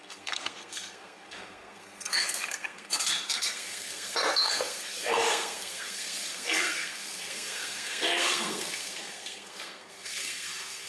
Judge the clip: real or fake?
fake